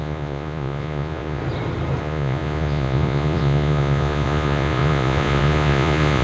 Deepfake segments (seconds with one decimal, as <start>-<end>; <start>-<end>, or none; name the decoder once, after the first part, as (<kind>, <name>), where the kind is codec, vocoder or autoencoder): 0.0-1.4 (vocoder, Vocos); 2.0-6.2